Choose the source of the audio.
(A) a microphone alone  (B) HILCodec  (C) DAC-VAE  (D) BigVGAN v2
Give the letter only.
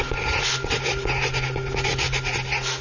A